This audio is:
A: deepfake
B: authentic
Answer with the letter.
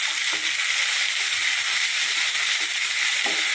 B